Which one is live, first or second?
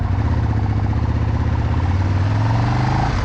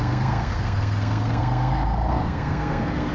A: first